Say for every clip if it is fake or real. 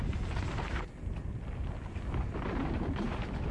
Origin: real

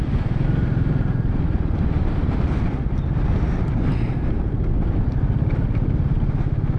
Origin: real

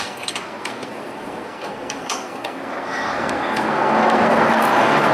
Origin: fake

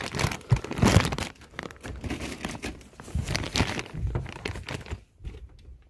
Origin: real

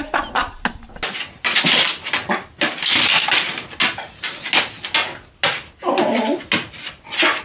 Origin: real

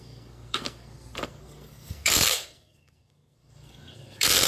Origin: fake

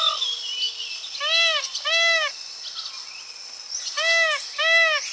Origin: real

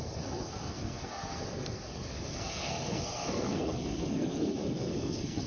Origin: fake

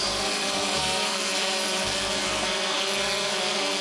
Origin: fake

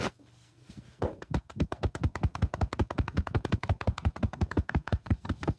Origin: fake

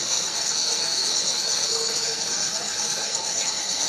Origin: fake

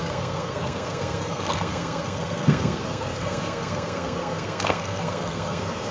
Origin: fake